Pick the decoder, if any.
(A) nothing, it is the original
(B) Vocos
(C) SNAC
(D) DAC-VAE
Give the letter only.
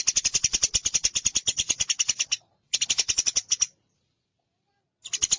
A